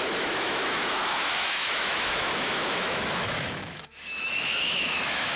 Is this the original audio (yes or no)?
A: no